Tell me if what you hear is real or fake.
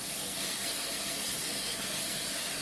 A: fake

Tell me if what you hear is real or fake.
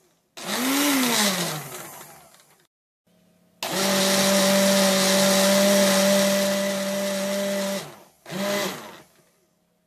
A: real